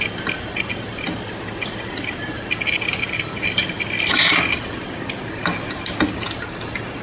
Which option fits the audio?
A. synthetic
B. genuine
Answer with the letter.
B